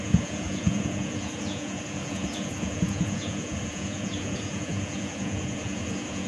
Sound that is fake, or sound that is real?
fake